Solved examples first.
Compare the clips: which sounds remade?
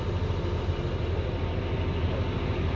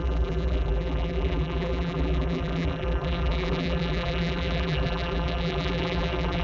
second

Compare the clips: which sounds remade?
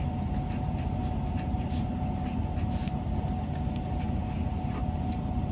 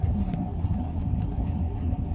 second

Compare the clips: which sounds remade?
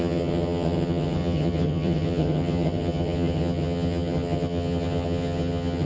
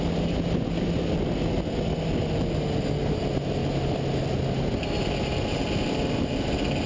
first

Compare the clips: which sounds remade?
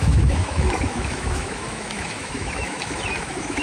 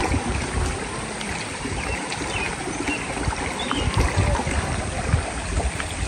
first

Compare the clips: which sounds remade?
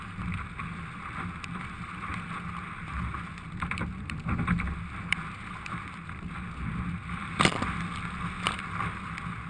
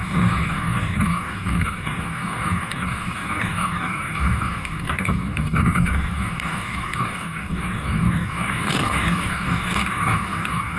second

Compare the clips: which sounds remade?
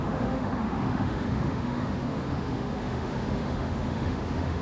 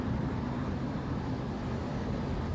first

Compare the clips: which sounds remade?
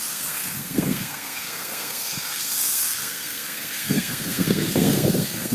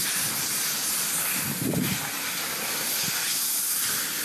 first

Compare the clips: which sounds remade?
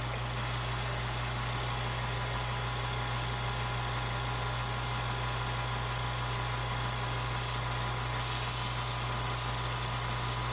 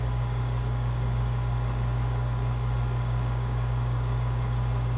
second